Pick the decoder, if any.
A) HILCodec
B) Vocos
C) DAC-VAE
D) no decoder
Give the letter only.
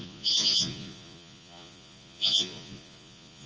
B